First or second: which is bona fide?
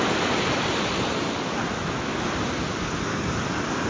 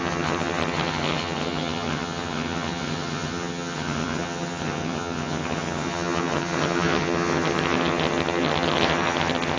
first